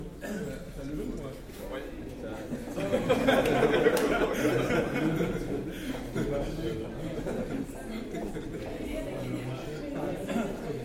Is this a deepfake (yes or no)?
no